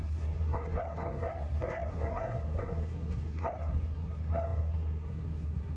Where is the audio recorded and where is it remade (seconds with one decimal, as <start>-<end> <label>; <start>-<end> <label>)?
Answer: 0.0-5.8 remade